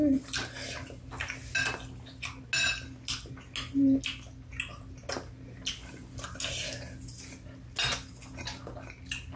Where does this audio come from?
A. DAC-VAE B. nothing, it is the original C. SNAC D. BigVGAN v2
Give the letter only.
B